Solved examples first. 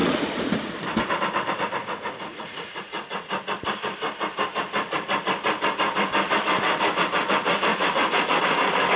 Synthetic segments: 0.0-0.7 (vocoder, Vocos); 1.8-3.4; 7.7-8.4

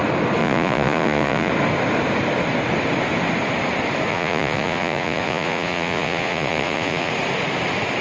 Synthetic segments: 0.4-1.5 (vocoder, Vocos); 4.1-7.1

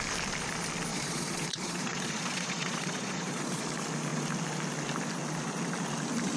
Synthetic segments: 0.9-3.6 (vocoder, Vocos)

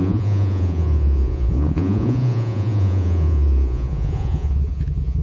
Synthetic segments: 0.0-5.2 (vocoder, Vocos)